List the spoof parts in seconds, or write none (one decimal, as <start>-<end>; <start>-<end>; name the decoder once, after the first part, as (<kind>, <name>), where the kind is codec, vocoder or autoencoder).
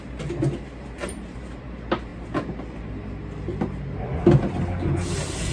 1.0-1.7 (vocoder, BigVGAN v2)